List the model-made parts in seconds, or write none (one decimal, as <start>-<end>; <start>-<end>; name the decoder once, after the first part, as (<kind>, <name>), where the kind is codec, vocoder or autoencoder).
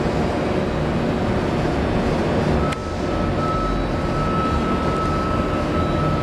none